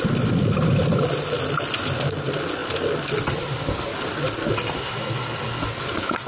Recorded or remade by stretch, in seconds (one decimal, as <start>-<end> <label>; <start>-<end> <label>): 0.0-6.3 recorded